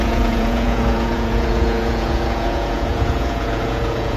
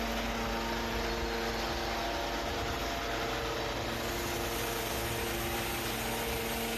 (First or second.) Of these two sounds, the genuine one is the second